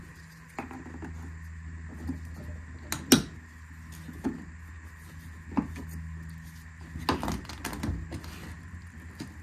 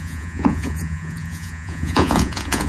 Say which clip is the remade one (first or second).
second